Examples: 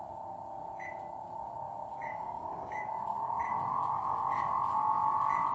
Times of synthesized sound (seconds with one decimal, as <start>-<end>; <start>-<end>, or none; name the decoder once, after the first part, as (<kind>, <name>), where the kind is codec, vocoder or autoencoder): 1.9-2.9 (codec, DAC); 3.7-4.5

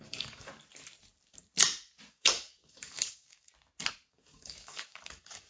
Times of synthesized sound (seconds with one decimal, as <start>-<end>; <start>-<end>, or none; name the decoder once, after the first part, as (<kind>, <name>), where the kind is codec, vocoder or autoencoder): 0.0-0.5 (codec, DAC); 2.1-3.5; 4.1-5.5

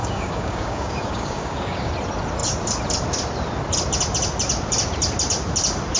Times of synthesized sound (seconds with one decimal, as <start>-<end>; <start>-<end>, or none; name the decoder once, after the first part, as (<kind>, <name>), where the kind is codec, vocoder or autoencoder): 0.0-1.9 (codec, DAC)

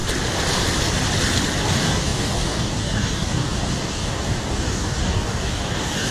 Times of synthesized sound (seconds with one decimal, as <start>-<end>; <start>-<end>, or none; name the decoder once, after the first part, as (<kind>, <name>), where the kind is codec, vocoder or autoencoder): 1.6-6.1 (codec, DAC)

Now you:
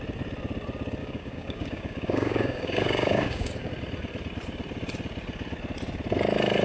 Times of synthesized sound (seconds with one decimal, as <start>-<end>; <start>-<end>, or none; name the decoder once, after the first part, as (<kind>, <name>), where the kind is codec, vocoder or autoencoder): 1.0-3.7 (codec, DAC)

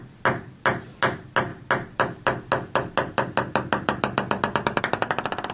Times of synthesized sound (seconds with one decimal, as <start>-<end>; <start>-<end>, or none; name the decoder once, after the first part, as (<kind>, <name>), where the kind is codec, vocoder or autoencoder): none

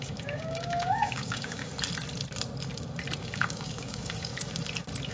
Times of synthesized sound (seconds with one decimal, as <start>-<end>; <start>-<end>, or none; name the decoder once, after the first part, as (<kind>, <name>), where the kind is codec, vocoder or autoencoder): 0.0-1.7 (codec, DAC); 3.2-4.3

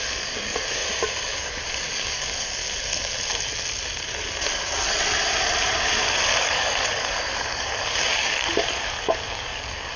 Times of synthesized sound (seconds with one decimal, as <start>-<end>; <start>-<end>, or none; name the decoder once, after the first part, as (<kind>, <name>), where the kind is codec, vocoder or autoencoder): 0.0-0.8 (codec, DAC); 1.3-2.6; 6.4-10.0